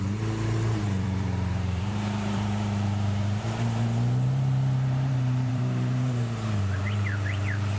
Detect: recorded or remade remade